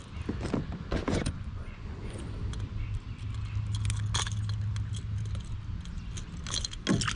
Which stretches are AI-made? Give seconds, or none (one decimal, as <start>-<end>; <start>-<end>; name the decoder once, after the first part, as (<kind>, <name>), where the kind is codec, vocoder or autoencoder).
1.1-2.2 (vocoder, Vocos)

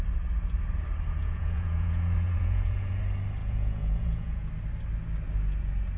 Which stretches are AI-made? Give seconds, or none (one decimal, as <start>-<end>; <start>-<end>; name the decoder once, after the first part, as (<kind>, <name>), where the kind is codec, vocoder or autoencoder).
1.2-3.0 (vocoder, Vocos); 3.4-4.5

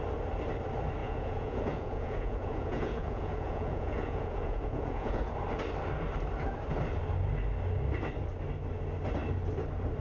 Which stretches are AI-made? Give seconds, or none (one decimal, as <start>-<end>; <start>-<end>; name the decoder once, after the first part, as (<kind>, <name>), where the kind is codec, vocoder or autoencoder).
1.0-5.3 (vocoder, Vocos)

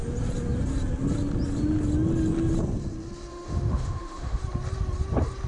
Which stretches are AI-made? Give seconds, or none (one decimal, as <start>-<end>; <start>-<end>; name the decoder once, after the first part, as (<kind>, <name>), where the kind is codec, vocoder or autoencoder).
3.3-4.4 (autoencoder, DAC-VAE)

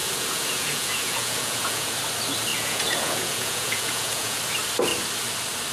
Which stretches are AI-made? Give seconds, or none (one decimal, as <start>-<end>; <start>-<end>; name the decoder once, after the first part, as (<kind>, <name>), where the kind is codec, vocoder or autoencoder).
0.0-1.9 (vocoder, Vocos); 2.5-4.4

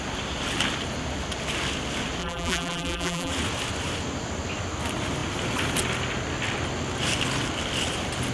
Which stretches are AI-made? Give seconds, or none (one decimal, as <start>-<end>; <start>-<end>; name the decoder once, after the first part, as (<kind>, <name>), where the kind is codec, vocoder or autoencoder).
2.2-3.3 (vocoder, BigVGAN v2)

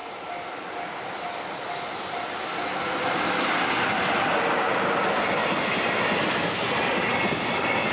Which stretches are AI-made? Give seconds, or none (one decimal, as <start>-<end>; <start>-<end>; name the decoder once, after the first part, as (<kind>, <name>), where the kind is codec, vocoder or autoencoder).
none